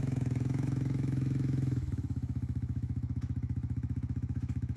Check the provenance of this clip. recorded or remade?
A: remade